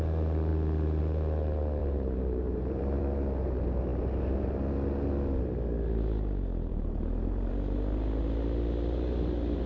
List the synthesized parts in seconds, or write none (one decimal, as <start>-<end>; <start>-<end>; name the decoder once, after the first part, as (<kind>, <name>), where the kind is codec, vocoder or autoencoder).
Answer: 1.8-3.0 (vocoder, BigVGAN v2); 6.7-7.5